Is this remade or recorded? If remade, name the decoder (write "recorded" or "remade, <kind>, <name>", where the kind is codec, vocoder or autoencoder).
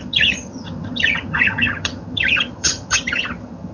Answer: remade, vocoder, HiFi-GAN